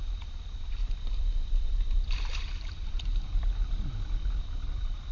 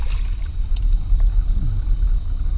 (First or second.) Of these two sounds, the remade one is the first